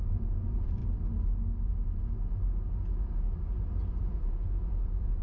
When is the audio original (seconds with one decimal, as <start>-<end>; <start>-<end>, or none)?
0.8-3.9